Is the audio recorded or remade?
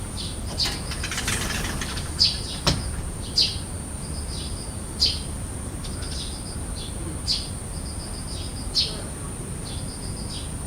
recorded